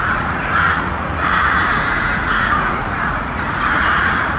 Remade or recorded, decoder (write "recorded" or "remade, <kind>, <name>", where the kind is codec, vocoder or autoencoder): remade, vocoder, Vocos